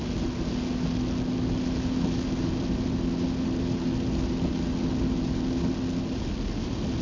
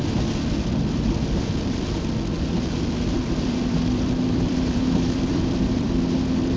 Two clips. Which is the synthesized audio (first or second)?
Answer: second